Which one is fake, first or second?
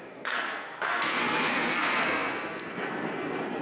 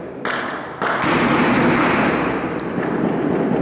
first